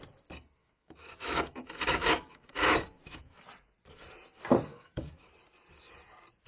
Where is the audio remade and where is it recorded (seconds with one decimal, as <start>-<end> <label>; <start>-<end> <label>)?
0.0-0.6 recorded; 0.6-3.4 remade; 3.4-4.7 recorded; 4.7-5.3 remade; 5.3-6.5 recorded